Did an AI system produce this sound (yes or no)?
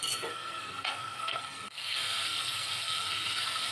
yes